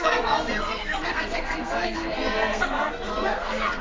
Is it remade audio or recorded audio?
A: remade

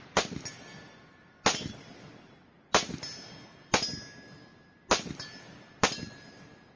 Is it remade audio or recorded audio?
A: recorded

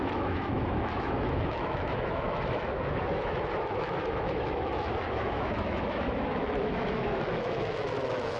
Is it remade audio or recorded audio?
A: remade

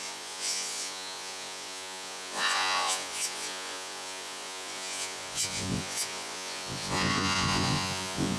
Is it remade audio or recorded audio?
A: remade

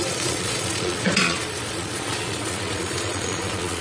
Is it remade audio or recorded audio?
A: remade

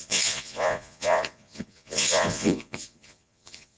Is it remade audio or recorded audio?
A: remade